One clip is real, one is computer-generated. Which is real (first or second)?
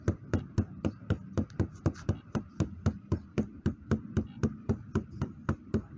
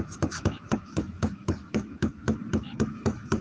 first